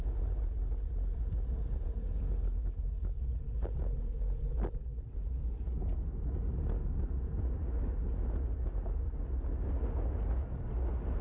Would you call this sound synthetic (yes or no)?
no